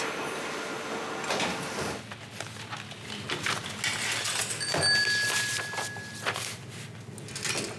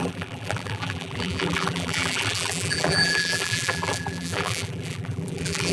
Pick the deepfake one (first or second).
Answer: second